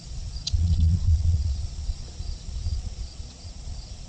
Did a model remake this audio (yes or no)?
yes